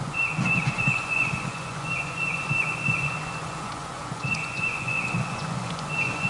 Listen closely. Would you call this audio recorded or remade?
remade